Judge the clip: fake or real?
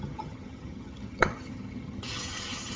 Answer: fake